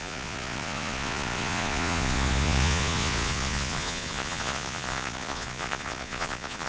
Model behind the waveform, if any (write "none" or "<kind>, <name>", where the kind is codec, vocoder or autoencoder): vocoder, Vocos